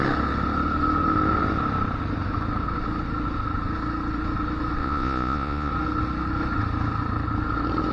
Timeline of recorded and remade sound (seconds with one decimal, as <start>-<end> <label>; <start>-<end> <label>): 0.0-4.8 recorded; 4.8-5.7 remade; 5.7-7.9 recorded